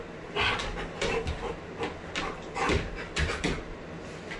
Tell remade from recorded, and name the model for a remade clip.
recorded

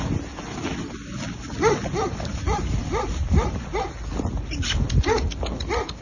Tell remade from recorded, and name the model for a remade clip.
recorded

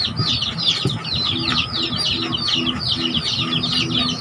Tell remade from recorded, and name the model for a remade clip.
recorded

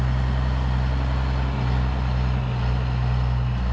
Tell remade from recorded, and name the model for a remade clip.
recorded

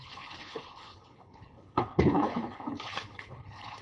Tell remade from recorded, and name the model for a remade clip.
remade, codec, HILCodec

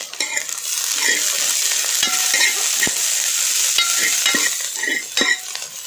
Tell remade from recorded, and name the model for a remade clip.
recorded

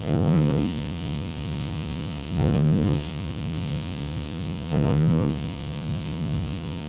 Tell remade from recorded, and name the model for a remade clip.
remade, vocoder, Vocos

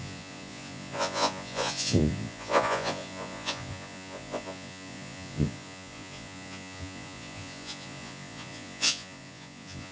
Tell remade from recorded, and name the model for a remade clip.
remade, vocoder, Vocos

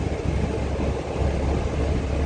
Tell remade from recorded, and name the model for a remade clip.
recorded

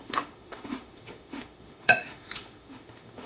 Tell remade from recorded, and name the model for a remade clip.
remade, autoencoder, DAC-VAE